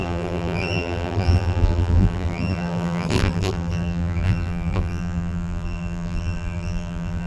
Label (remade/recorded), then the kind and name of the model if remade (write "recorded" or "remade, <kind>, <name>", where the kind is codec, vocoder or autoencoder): remade, vocoder, BigVGAN v2